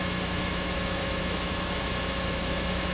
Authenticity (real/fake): fake